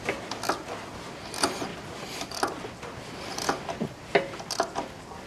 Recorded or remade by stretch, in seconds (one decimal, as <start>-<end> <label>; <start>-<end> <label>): 0.0-5.3 recorded